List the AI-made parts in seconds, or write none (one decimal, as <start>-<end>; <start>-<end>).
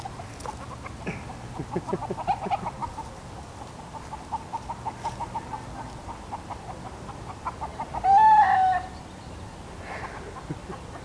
none